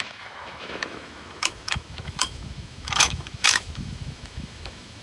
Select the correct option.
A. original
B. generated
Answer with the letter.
B